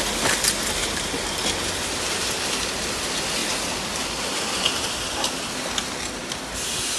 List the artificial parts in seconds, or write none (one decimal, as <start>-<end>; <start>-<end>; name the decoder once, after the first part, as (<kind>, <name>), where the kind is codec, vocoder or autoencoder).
0.8-1.7 (vocoder, BigVGAN v2); 6.2-7.0